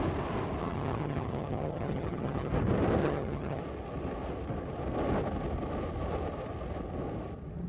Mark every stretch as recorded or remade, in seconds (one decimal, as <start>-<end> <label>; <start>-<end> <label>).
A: 0.0-0.6 recorded; 0.6-2.5 remade; 2.5-3.0 recorded; 3.0-3.6 remade; 3.6-7.7 recorded